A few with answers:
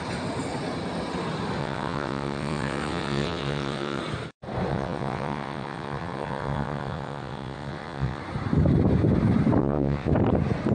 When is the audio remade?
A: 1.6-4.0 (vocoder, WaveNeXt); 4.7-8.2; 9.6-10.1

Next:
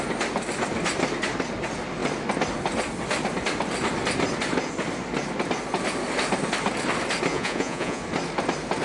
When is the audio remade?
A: 7.3-8.0 (vocoder, Vocos)